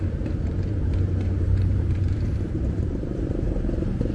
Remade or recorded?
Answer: remade